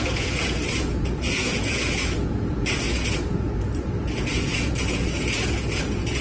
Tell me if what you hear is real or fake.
fake